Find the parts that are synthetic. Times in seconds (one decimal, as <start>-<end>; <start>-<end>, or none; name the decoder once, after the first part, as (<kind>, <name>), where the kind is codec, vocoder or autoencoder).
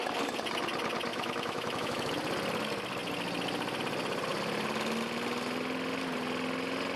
1.1-2.1 (autoencoder, DAC-VAE)